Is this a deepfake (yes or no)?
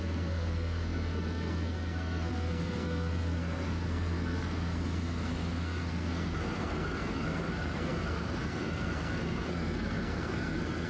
yes